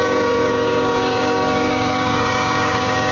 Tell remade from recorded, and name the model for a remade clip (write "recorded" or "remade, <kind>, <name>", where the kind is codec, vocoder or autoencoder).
remade, codec, DAC